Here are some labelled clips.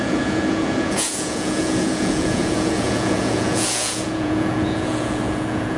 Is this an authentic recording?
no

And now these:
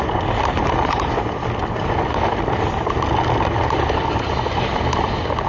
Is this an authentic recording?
yes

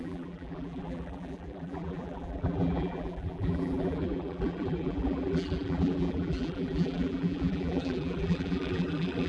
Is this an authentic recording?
no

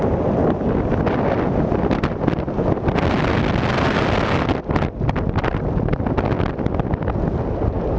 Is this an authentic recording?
yes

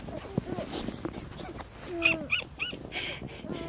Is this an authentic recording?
yes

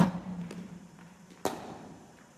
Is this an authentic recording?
no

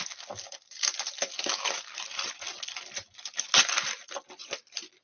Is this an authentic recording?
yes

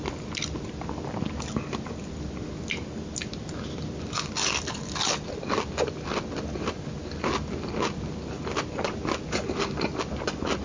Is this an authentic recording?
yes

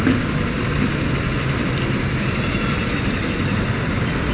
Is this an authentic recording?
yes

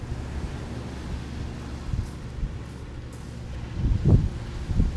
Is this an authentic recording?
yes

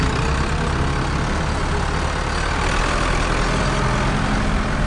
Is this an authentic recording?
yes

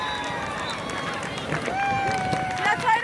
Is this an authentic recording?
yes